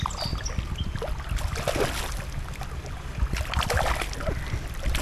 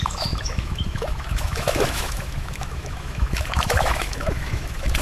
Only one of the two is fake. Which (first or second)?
second